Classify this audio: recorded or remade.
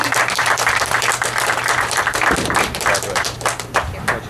remade